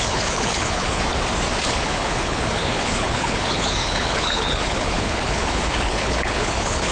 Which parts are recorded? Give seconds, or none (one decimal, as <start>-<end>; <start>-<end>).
1.1-1.7